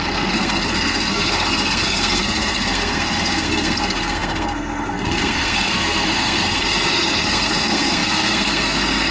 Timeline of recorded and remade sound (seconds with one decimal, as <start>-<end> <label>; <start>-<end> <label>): 0.0-9.1 remade

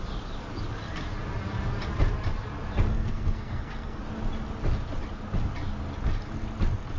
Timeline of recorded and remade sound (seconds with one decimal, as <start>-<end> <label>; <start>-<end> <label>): 0.0-2.9 recorded; 2.9-4.0 remade; 4.0-7.0 recorded

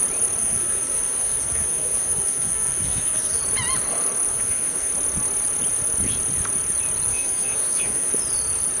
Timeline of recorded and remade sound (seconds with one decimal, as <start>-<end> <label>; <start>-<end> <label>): 0.0-0.4 recorded; 0.4-3.4 remade; 3.4-4.3 recorded; 4.3-4.9 remade; 4.9-7.1 recorded; 7.1-8.1 remade; 8.1-8.8 recorded

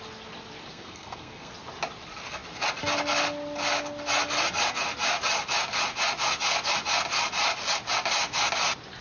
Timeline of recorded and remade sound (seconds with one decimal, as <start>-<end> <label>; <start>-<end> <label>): 0.0-0.7 recorded; 0.7-1.5 remade; 1.5-9.0 recorded

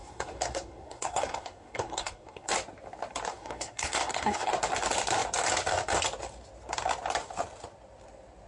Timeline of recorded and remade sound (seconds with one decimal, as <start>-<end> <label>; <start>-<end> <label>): 0.0-2.5 remade; 2.5-3.3 recorded; 3.3-4.5 remade; 4.5-8.5 recorded

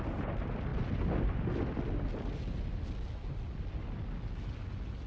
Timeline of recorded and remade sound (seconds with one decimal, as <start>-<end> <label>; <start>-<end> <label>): 0.0-5.1 recorded

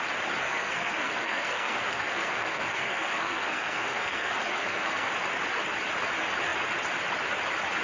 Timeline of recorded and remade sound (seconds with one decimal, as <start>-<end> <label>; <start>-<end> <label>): 0.0-0.4 recorded; 0.4-5.1 remade; 5.1-7.8 recorded